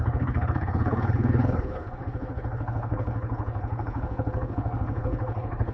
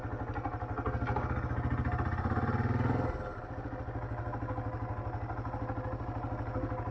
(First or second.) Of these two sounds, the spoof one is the first